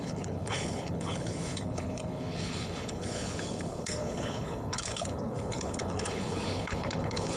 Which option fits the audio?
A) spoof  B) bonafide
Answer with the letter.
A